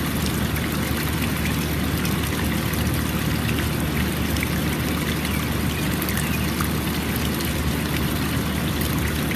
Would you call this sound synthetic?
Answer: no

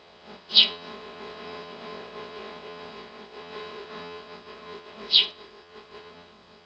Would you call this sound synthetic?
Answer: yes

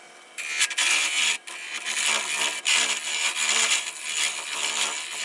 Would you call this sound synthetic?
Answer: no